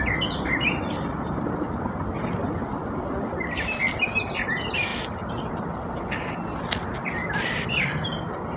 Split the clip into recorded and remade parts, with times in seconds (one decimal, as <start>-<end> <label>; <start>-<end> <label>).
0.0-8.6 recorded